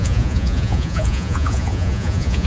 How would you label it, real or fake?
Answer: fake